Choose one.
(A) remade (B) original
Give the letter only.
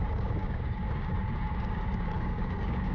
A